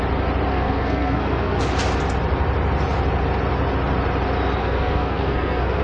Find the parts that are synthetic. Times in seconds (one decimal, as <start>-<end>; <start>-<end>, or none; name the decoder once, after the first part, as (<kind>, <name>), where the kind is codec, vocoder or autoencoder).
0.5-1.6 (codec, SNAC); 4.6-5.8